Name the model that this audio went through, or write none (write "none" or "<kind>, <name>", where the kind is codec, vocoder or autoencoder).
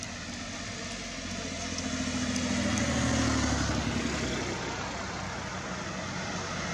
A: none